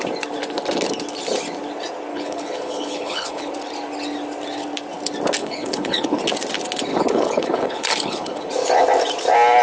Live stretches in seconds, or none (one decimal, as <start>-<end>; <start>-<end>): 0.0-2.1; 3.5-5.4; 6.2-6.9; 8.5-9.6